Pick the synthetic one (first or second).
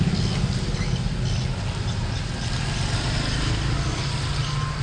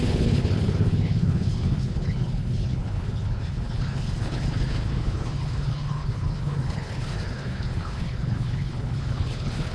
second